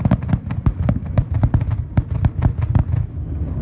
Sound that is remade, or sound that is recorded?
recorded